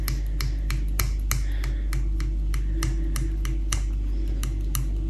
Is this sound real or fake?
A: real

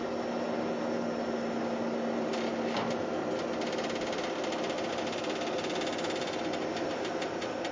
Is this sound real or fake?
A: real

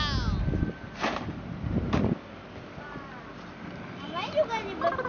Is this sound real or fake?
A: real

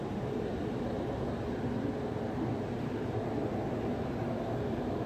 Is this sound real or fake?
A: fake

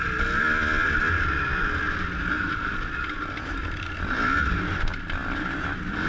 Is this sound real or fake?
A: real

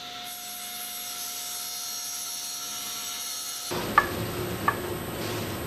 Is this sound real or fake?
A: real